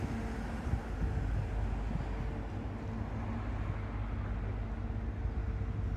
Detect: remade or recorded recorded